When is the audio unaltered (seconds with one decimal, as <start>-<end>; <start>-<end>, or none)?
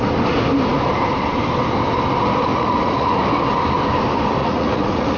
0.0-2.5; 3.2-4.4